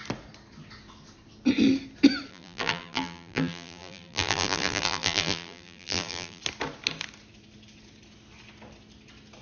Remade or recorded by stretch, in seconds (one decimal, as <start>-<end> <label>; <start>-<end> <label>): 0.0-2.3 recorded; 2.3-6.4 remade; 6.4-9.4 recorded